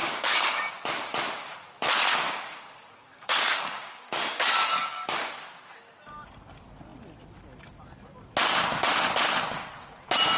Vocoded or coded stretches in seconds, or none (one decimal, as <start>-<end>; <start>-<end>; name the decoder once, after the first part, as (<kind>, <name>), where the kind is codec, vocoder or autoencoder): 0.0-0.6 (codec, DAC); 2.1-5.3